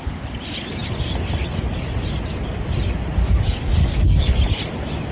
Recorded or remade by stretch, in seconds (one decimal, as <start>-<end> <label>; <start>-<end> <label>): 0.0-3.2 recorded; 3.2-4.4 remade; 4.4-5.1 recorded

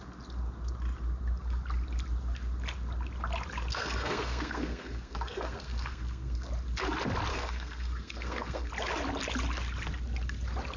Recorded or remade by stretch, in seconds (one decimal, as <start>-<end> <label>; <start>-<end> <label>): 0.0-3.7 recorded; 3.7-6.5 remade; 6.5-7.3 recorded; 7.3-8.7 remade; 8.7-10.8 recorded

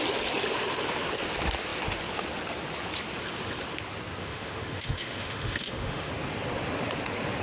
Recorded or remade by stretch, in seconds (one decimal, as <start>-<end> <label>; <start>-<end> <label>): 0.0-4.2 recorded; 4.2-6.1 remade; 6.1-7.4 recorded